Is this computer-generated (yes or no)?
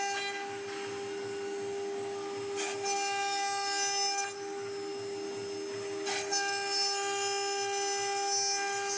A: no